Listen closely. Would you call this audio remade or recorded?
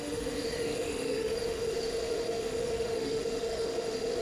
remade